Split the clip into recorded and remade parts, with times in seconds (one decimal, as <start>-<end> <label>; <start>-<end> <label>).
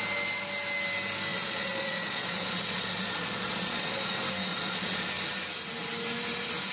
0.0-1.3 recorded; 1.3-4.1 remade; 4.1-4.5 recorded; 4.5-5.1 remade; 5.1-6.7 recorded